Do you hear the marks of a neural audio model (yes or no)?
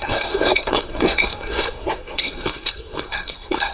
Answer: yes